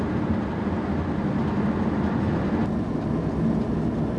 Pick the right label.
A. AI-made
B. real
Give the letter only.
B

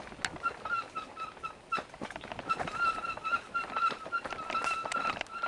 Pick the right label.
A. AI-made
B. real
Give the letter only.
B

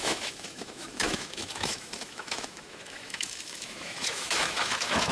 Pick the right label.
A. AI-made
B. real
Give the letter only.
A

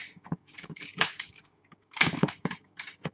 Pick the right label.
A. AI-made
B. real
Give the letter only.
A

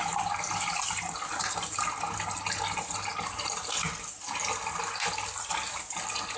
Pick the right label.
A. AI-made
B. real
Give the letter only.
B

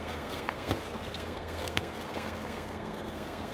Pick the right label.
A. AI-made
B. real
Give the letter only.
A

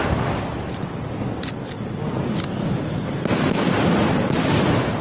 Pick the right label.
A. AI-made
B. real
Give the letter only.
B